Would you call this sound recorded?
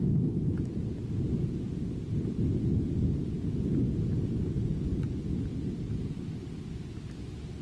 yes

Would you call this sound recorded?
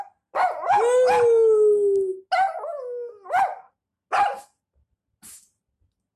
yes